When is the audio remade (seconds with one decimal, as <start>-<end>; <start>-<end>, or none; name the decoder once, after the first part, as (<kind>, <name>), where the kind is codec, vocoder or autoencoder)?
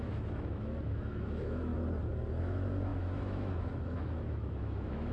0.0-1.7 (autoencoder, DAC-VAE); 2.4-5.1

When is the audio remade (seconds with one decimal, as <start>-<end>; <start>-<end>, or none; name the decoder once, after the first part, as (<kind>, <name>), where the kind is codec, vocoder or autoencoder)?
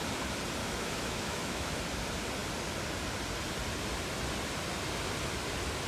0.6-1.8 (autoencoder, DAC-VAE)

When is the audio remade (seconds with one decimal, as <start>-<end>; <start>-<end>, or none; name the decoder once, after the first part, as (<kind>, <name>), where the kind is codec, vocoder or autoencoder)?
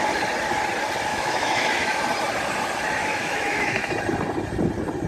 1.1-2.0 (autoencoder, DAC-VAE); 3.0-3.9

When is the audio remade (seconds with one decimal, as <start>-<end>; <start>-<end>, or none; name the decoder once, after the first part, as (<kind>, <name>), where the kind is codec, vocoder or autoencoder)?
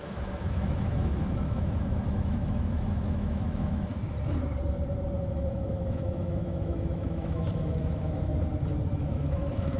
0.0-3.9 (autoencoder, DAC-VAE); 5.3-8.3; 8.9-9.8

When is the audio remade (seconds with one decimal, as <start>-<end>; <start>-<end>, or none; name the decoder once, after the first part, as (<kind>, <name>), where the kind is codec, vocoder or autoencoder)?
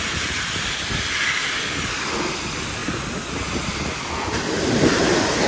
none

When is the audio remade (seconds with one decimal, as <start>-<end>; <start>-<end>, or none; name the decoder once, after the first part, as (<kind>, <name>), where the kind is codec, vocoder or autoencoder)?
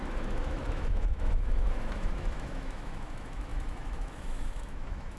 0.0-5.2 (autoencoder, DAC-VAE)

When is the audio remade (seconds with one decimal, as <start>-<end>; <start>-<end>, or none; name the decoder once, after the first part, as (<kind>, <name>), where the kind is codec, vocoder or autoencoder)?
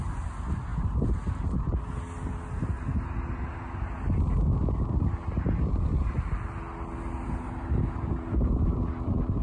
none